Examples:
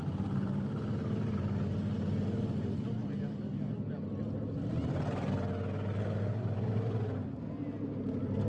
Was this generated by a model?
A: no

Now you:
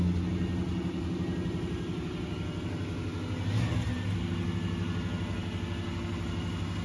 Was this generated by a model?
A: no